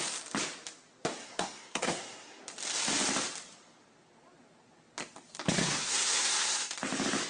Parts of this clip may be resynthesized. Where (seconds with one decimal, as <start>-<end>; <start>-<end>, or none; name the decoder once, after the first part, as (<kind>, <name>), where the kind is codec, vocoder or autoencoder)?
1.2-2.4 (codec, SNAC); 5.6-6.7